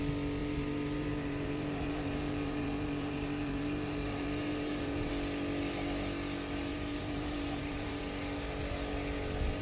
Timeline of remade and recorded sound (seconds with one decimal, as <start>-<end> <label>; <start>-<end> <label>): 0.0-0.4 recorded; 0.4-5.1 remade; 5.1-6.7 recorded; 6.7-8.0 remade; 8.0-9.6 recorded